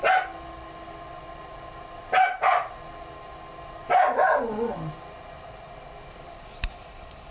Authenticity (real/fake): real